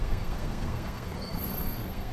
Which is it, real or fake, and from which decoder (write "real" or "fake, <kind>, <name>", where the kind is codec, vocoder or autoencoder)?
fake, codec, SNAC